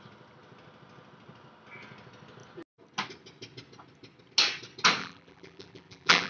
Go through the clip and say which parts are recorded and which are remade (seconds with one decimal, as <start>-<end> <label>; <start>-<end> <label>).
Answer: 0.0-5.0 recorded; 5.0-6.3 remade